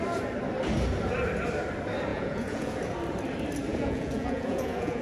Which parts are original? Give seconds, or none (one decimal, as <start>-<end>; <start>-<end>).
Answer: 0.0-2.1; 2.8-3.7